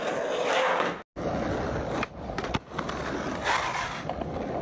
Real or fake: real